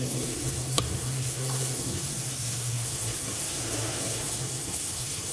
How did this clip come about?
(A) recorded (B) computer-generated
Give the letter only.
B